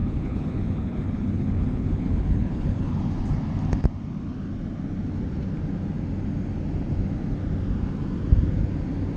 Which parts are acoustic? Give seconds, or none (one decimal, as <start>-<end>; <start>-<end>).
3.0-9.2